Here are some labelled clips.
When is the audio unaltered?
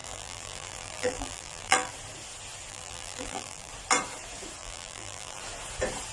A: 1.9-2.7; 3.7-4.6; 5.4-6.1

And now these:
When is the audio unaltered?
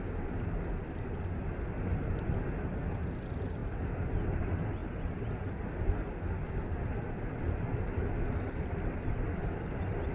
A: 0.0-10.1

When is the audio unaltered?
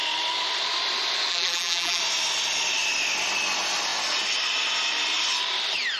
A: 0.0-1.3; 2.0-6.0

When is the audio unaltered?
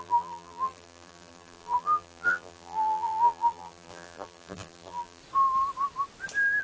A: 5.2-6.6